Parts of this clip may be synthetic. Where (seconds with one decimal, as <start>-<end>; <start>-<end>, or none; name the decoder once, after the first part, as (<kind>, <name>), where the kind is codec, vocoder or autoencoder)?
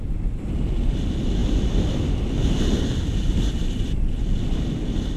1.4-4.5 (vocoder, BigVGAN v2)